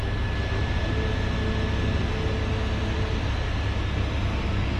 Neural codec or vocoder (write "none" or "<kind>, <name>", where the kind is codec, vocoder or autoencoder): none